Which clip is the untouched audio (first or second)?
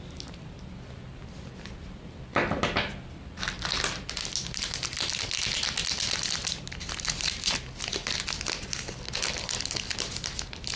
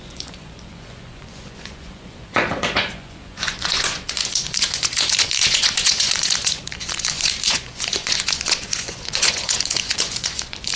first